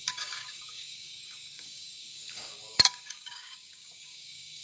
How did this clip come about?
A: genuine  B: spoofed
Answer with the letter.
B